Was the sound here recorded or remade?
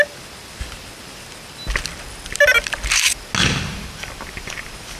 recorded